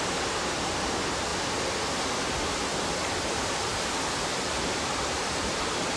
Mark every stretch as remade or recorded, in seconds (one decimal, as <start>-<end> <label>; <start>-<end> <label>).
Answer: 0.0-2.7 recorded; 2.7-6.0 remade